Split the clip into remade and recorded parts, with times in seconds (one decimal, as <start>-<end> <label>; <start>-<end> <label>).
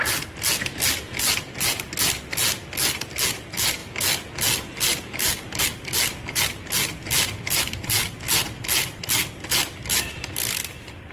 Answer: 0.0-11.1 recorded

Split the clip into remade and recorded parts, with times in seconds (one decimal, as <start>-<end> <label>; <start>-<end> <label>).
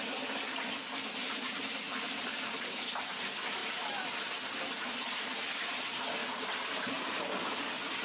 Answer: 0.0-1.2 recorded; 1.2-3.2 remade; 3.2-3.6 recorded; 3.6-4.3 remade; 4.3-6.2 recorded; 6.2-7.3 remade; 7.3-8.0 recorded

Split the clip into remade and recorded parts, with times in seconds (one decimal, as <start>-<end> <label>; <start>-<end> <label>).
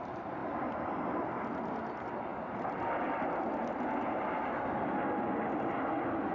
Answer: 0.0-6.3 recorded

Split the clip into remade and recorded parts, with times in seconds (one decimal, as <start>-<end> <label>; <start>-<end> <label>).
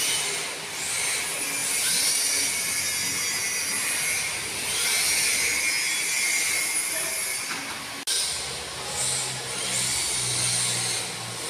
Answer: 0.0-11.5 recorded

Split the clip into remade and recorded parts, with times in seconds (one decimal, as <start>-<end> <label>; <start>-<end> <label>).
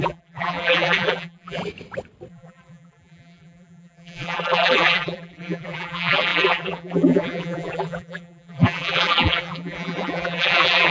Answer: 0.0-1.6 remade; 1.6-2.3 recorded; 2.3-10.9 remade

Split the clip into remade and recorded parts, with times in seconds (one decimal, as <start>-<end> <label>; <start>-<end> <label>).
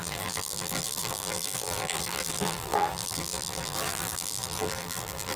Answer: 0.0-5.4 remade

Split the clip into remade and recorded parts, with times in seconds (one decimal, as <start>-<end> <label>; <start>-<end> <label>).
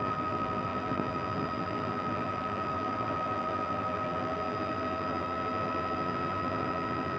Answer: 0.0-7.2 remade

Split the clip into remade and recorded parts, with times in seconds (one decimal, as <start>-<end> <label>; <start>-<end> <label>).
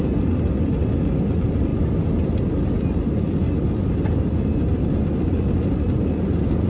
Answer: 0.0-4.7 recorded; 4.7-6.7 remade